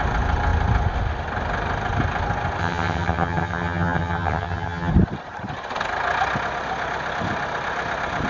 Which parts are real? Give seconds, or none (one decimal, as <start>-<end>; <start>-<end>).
0.0-2.6; 4.9-8.3